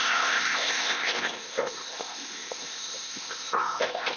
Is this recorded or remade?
remade